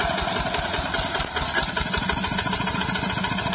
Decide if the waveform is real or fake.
real